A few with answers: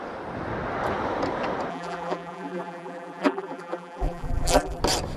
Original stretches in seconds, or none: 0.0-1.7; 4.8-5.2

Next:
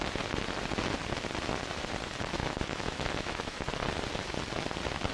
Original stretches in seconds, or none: 0.0-2.4; 3.6-5.1